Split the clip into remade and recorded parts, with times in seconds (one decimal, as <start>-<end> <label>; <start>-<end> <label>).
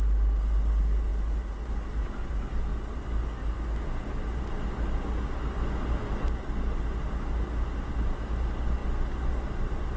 0.0-10.0 recorded